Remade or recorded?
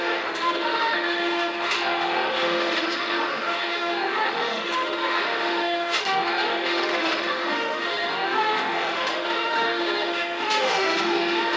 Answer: remade